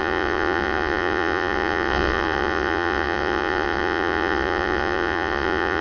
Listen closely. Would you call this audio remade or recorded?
remade